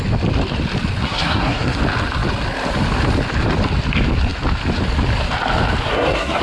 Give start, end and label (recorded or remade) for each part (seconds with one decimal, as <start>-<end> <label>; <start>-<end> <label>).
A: 0.0-1.0 recorded; 1.0-1.8 remade; 1.8-5.9 recorded; 5.9-6.4 remade

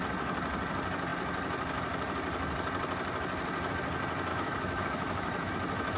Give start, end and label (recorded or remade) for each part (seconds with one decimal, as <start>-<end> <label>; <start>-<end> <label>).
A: 0.0-4.3 recorded; 4.3-5.5 remade; 5.5-6.0 recorded